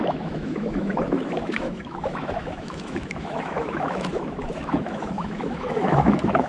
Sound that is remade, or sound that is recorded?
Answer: remade